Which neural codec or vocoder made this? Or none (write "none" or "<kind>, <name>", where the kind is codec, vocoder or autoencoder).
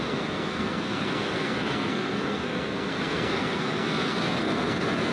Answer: codec, SNAC